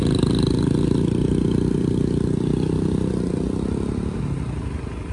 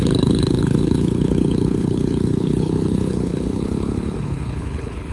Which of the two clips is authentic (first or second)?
first